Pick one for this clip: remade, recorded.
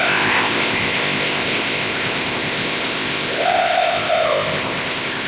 remade